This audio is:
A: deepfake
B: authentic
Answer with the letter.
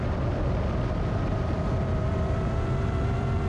B